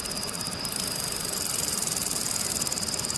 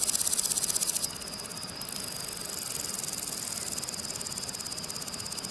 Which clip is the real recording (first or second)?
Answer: second